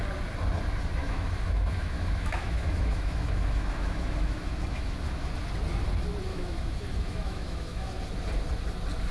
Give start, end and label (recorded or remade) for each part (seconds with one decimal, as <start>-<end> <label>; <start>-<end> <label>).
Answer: 0.0-1.0 recorded; 1.0-5.3 remade; 5.3-6.3 recorded; 6.3-8.0 remade; 8.0-9.1 recorded

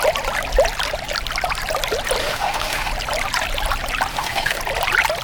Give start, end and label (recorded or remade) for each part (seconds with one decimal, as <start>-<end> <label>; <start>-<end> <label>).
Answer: 0.0-2.2 recorded; 2.2-2.9 remade; 2.9-4.1 recorded; 4.1-4.6 remade; 4.6-5.2 recorded